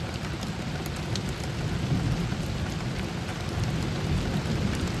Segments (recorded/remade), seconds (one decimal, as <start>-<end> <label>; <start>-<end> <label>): 0.0-5.0 recorded